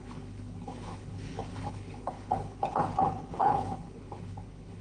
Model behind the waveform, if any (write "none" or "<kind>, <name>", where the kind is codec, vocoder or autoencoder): codec, HILCodec